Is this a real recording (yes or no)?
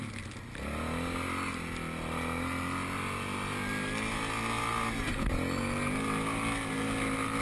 yes